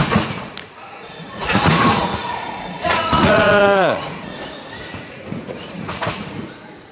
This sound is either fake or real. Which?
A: fake